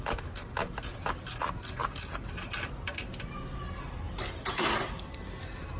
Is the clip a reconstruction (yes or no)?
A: no